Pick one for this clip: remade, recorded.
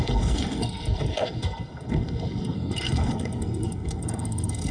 remade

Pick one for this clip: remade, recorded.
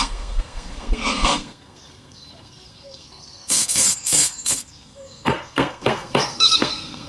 remade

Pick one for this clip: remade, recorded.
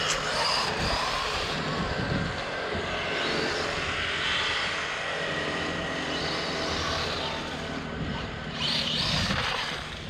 recorded